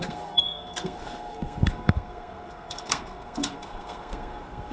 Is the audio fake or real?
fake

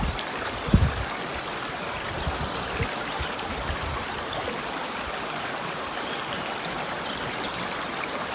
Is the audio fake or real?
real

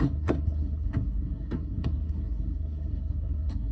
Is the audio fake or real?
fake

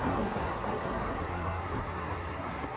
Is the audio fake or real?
fake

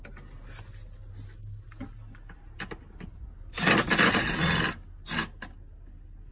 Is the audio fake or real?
real